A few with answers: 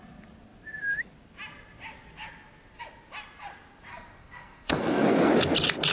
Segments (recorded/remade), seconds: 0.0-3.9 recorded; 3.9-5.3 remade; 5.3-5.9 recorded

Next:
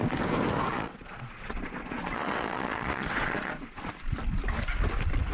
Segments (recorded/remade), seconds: 0.0-0.7 recorded; 0.7-3.9 remade; 3.9-5.3 recorded